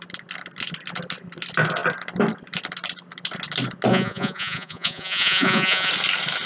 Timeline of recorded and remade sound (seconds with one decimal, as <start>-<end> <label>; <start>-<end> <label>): 0.0-3.9 recorded; 3.9-5.9 remade; 5.9-6.5 recorded